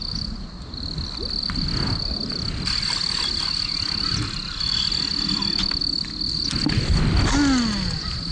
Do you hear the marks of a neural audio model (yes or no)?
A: no